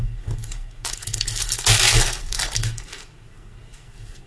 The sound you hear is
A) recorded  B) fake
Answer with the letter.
B